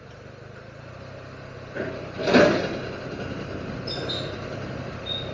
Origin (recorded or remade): recorded